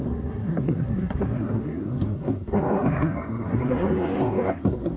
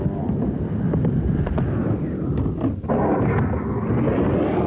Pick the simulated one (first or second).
first